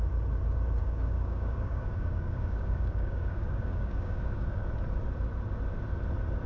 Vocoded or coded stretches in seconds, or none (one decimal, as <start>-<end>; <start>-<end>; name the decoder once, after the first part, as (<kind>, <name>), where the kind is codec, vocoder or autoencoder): 0.8-4.7 (codec, DAC)